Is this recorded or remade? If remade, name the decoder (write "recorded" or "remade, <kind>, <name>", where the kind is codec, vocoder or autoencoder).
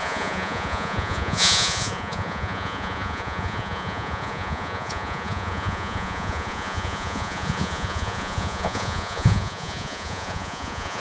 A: remade, vocoder, Vocos